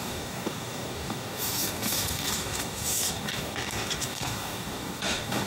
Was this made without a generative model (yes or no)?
no